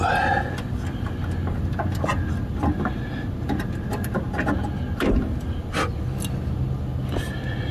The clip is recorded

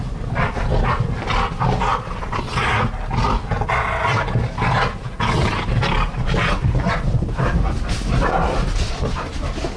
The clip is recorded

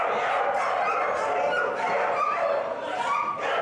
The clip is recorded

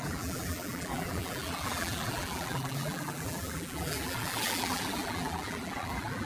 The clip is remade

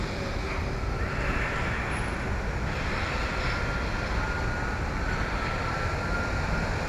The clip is recorded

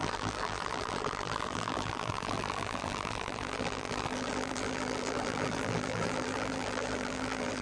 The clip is remade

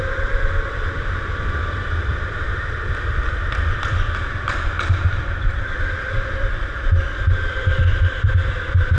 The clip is remade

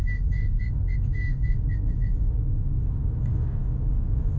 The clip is recorded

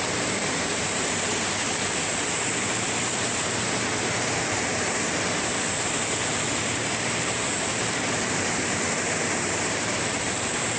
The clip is remade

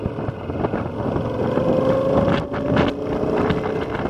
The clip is recorded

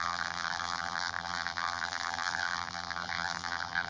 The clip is remade